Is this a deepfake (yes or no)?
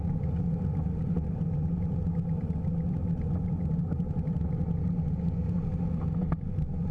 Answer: no